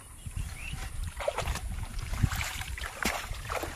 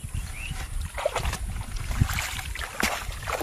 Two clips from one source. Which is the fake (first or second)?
first